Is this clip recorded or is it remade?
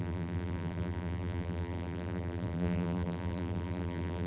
remade